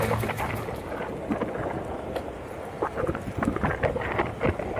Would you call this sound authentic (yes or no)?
yes